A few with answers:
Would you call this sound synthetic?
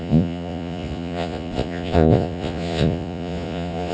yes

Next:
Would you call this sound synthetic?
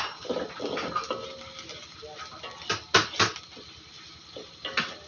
no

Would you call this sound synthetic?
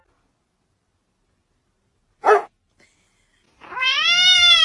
no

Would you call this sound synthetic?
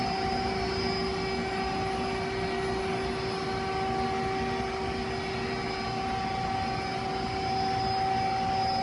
no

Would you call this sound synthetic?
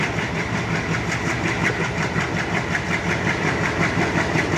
no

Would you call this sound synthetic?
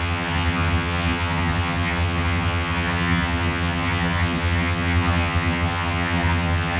yes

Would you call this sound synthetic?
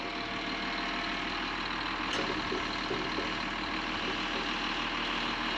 no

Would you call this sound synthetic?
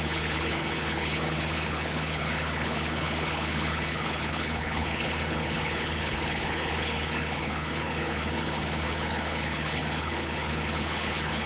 yes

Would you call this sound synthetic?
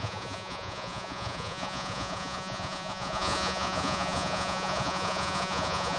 yes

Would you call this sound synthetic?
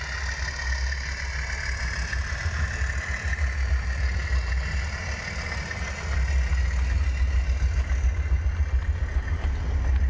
no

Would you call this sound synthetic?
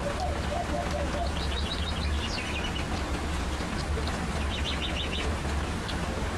no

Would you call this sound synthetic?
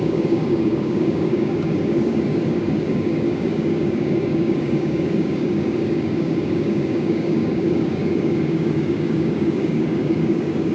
yes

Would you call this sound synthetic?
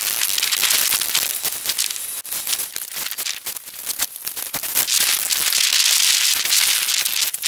no